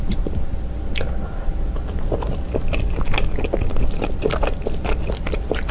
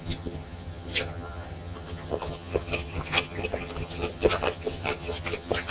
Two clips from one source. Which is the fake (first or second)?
second